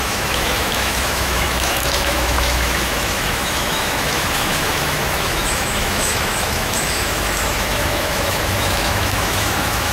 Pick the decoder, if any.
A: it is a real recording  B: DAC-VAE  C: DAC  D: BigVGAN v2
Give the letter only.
B